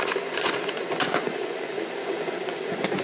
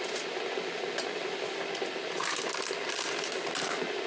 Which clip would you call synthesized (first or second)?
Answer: first